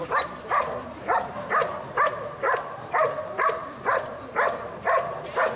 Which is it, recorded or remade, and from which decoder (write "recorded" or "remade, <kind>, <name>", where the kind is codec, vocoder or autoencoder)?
remade, vocoder, BigVGAN v2